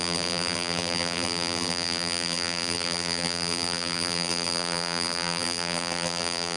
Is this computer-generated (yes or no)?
yes